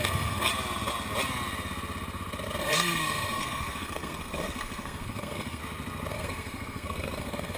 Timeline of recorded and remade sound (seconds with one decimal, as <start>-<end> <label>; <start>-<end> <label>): 0.0-0.5 remade; 0.5-2.6 recorded; 2.6-5.6 remade; 5.6-6.1 recorded; 6.1-7.6 remade